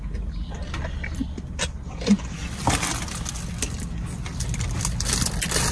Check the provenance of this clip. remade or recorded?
recorded